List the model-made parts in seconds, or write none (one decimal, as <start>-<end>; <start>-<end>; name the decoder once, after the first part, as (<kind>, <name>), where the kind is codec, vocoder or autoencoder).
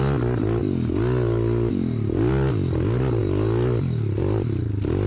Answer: none